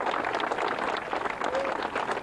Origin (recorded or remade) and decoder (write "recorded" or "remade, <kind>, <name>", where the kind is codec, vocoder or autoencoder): recorded